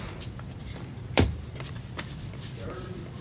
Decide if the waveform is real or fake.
fake